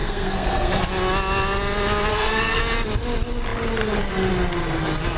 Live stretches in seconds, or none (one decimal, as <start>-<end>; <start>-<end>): 0.7-2.1; 2.6-5.2